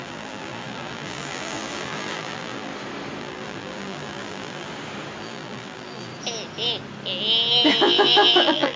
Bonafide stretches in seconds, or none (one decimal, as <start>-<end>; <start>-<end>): 2.7-3.2; 4.7-5.2; 6.1-7.8